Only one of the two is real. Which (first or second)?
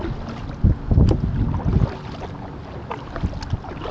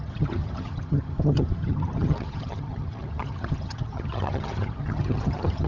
first